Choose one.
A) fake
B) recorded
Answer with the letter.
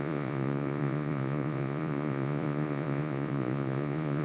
A